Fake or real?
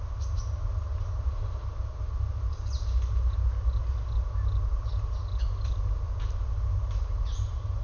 real